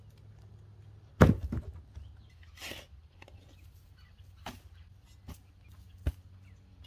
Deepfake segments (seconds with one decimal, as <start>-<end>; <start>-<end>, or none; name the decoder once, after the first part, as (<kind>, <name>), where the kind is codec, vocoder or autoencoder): 3.0-4.9 (vocoder, BigVGAN v2)